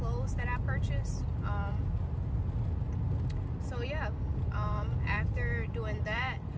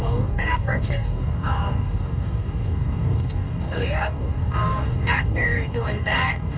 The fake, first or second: second